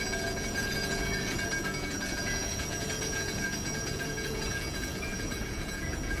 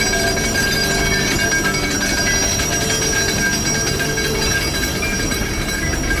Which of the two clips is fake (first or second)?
first